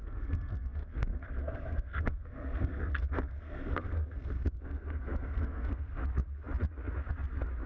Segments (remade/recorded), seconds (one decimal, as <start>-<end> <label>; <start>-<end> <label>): 0.0-6.0 remade; 6.0-7.7 recorded